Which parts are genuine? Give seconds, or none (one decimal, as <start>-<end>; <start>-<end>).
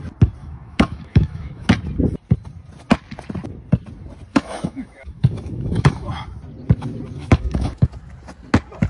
0.0-0.4; 1.7-4.3; 6.1-7.2; 7.9-8.9